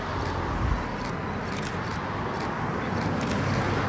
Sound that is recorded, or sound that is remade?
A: recorded